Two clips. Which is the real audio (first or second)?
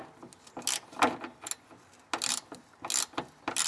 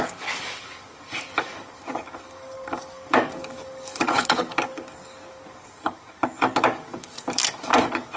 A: first